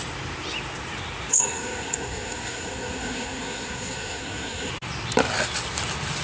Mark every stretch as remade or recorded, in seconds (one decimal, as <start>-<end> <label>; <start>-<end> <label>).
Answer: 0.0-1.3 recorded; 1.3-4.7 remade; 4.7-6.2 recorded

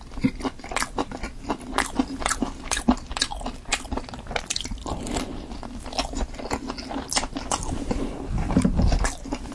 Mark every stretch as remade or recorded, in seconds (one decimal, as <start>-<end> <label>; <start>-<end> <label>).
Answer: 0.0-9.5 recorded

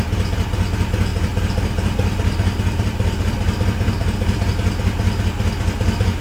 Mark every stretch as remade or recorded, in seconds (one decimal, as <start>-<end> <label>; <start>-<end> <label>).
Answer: 0.0-1.1 recorded; 1.1-4.5 remade; 4.5-6.2 recorded

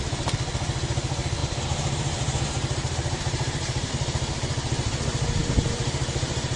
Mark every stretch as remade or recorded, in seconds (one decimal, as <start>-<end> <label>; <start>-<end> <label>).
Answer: 0.0-1.4 recorded; 1.4-3.9 remade; 3.9-5.4 recorded; 5.4-6.6 remade